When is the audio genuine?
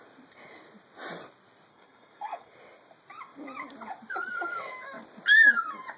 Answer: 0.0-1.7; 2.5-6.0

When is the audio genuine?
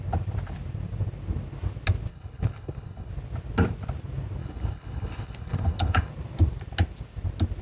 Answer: 0.0-2.1; 3.1-4.4; 6.1-7.6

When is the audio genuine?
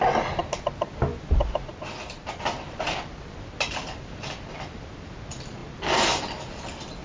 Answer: 0.0-7.0